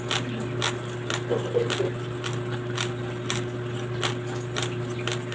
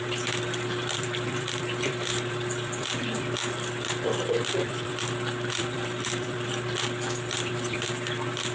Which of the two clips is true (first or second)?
first